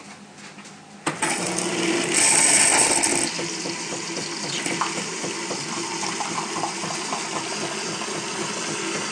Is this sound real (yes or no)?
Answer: yes